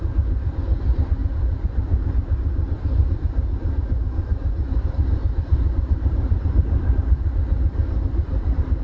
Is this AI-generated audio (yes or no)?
yes